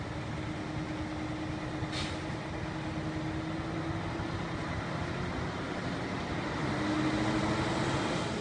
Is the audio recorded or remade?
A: recorded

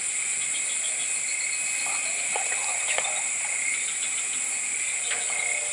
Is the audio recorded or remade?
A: recorded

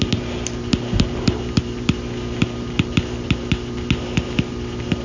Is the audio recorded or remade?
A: recorded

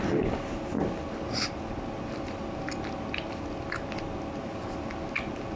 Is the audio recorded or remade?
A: recorded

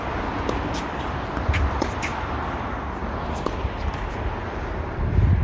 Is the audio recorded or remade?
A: remade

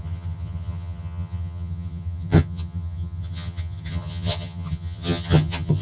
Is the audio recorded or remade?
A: remade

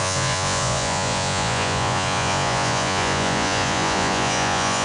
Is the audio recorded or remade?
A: remade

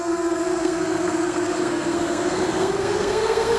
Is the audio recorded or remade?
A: remade